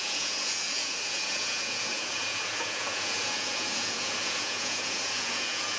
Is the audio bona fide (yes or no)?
no